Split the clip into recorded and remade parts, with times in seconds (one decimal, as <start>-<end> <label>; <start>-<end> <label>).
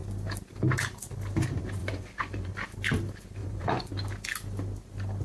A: 0.0-1.8 recorded; 1.8-2.5 remade; 2.5-3.4 recorded; 3.4-3.9 remade; 3.9-5.2 recorded